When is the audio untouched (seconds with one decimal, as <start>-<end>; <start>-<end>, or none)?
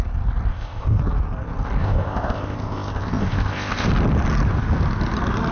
0.0-0.5; 1.0-1.8; 3.9-5.5